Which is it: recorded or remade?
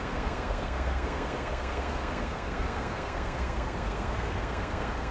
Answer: remade